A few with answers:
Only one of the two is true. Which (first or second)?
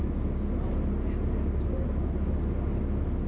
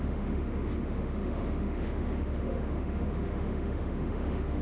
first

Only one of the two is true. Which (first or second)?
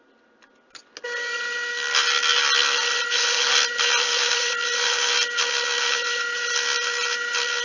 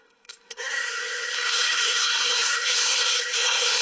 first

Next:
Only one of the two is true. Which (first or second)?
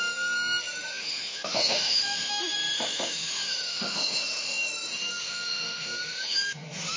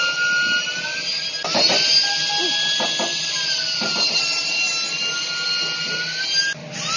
second